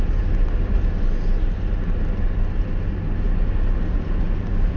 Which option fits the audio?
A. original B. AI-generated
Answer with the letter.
A